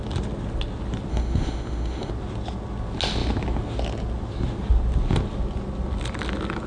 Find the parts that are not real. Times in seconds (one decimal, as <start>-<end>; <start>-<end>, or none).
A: 1.1-2.1